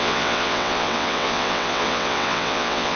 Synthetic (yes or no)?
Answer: yes